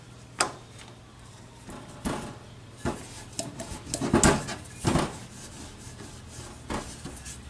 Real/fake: real